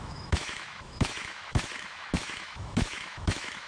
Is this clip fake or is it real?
fake